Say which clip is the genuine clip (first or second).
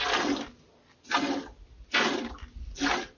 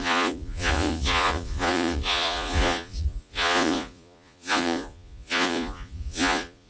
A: first